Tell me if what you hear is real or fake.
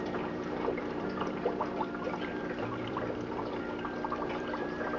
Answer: fake